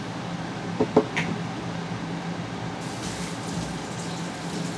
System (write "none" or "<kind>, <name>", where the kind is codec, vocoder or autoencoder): none